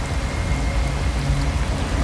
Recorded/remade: recorded